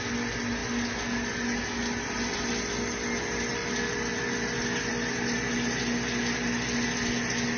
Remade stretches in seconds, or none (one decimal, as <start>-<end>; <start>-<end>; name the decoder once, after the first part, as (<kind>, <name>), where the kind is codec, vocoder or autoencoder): none